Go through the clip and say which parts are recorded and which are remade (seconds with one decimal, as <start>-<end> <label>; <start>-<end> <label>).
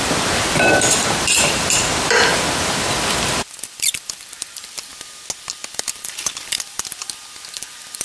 0.0-4.9 remade; 4.9-5.7 recorded; 5.7-8.0 remade